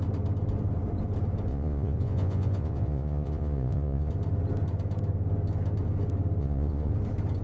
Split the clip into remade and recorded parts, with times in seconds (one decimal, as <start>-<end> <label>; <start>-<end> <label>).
0.0-1.5 recorded; 1.5-4.1 remade; 4.1-6.4 recorded; 6.4-6.9 remade; 6.9-7.4 recorded